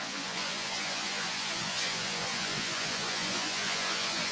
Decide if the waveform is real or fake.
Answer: fake